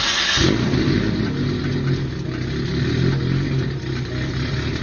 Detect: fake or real real